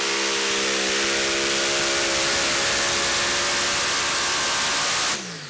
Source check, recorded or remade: recorded